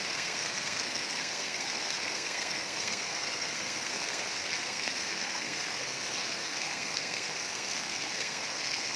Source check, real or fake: fake